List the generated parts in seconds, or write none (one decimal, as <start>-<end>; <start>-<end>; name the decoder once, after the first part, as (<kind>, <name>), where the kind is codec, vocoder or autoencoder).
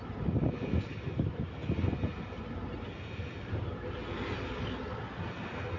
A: none